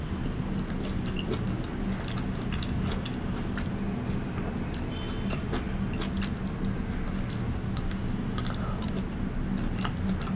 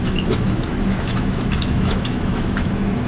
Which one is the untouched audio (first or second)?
first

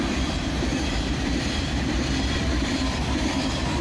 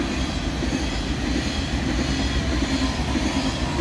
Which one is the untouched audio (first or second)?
second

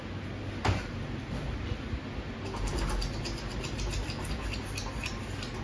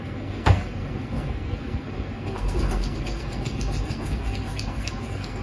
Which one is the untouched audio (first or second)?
first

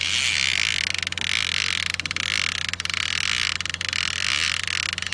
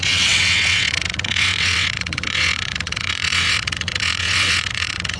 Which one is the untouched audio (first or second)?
first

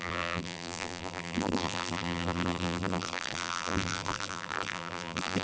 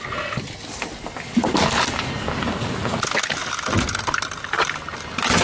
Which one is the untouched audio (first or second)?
second